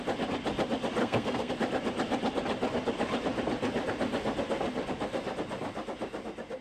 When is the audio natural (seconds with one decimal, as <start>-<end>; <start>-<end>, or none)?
0.0-1.0; 1.5-6.6